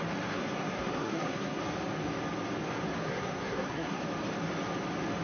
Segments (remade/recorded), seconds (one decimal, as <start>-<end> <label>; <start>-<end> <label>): 0.0-0.4 recorded; 0.4-1.6 remade; 1.6-3.0 recorded; 3.0-4.0 remade; 4.0-5.2 recorded